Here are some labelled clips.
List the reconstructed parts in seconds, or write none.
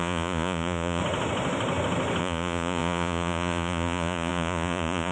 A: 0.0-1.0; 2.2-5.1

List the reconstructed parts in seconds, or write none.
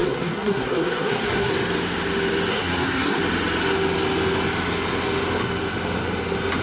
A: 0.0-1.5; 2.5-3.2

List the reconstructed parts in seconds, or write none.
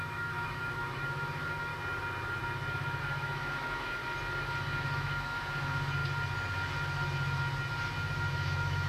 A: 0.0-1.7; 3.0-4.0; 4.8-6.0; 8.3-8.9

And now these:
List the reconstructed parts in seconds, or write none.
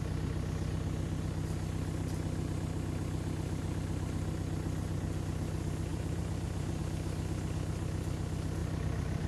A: 5.9-6.8; 8.6-9.3